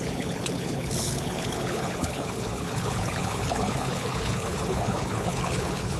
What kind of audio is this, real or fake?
fake